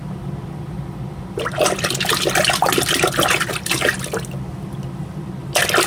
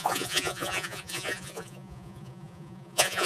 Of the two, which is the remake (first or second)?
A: second